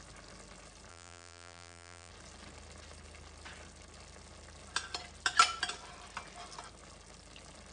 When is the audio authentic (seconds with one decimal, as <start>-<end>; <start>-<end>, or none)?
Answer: 0.0-0.9; 2.1-7.7